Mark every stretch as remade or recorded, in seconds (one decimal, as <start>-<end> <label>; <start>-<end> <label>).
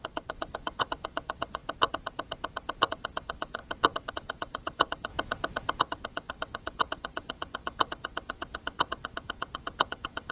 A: 0.0-1.6 remade; 1.6-2.9 recorded; 2.9-3.6 remade; 3.6-4.1 recorded; 4.1-5.1 remade; 5.1-5.8 recorded; 5.8-10.3 remade